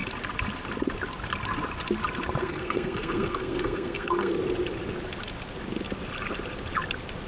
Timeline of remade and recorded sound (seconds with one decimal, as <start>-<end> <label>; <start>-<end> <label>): 0.0-2.4 recorded; 2.4-4.3 remade; 4.3-7.3 recorded